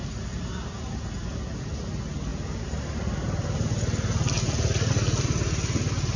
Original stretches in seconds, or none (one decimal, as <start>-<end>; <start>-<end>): 0.0-6.2